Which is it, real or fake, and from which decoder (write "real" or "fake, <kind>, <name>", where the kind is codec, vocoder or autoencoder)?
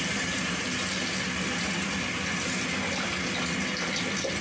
real